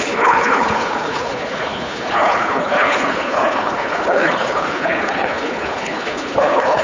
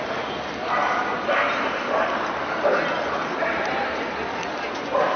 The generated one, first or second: first